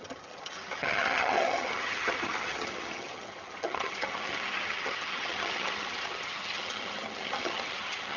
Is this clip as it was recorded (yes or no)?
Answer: no